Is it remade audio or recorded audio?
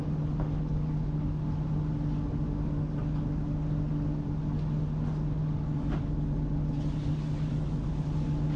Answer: recorded